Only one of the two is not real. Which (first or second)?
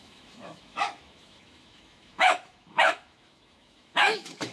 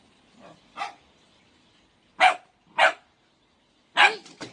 first